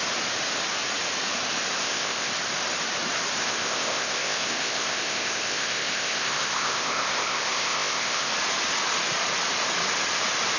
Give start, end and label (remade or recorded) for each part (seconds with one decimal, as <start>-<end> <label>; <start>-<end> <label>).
0.0-1.8 recorded; 1.8-2.3 remade; 2.3-3.4 recorded; 3.4-8.3 remade; 8.3-10.6 recorded